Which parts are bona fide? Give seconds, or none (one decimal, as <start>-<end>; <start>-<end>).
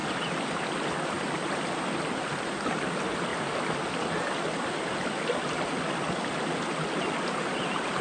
0.0-8.0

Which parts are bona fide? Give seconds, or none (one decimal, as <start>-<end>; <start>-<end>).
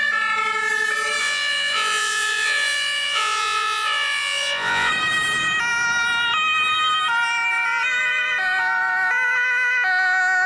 0.0-1.2; 4.9-10.5